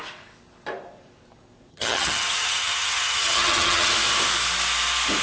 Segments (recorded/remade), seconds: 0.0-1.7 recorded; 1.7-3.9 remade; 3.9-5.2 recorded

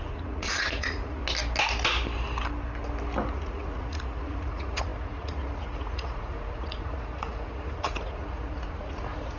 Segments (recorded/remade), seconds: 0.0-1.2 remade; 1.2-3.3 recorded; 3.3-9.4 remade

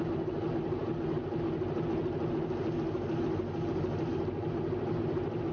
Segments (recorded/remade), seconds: 0.0-5.5 recorded